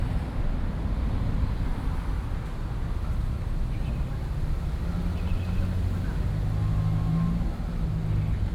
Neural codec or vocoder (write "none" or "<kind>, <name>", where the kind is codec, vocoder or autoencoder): none